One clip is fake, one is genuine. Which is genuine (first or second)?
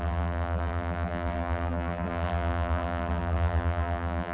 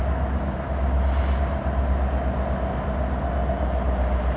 second